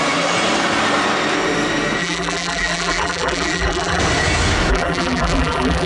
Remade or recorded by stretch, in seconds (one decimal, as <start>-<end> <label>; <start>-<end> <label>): 0.0-2.0 recorded; 2.0-4.0 remade; 4.0-4.7 recorded; 4.7-5.9 remade